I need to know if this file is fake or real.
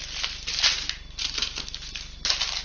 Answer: real